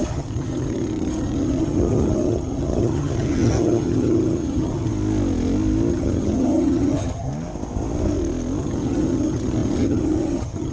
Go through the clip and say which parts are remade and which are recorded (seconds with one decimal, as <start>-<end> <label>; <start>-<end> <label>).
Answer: 0.0-4.9 remade; 4.9-5.9 recorded; 5.9-7.3 remade; 7.3-8.6 recorded; 8.6-10.7 remade